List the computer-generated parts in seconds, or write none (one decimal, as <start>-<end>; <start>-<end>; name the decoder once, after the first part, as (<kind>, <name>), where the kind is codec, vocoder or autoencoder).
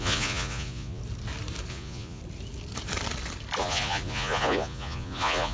0.0-1.0 (vocoder, Vocos); 1.7-2.2; 3.6-5.5